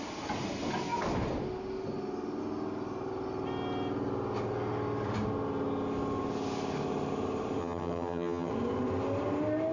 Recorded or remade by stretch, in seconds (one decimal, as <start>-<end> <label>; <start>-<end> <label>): 0.0-7.6 recorded; 7.6-8.5 remade; 8.5-9.7 recorded